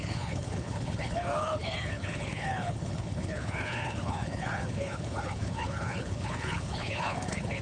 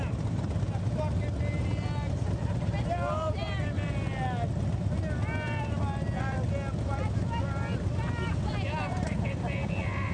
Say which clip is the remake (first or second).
first